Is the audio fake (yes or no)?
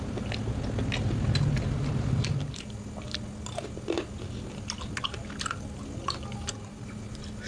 no